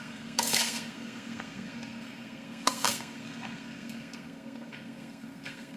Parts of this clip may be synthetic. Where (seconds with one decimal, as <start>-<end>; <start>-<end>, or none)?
0.0-5.8